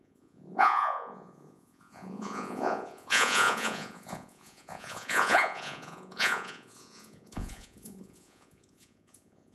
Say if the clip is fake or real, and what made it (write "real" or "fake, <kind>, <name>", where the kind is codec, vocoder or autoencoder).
fake, vocoder, Vocos